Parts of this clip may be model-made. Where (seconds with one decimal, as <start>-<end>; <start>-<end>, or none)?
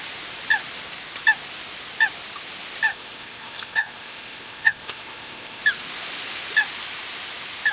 2.9-5.6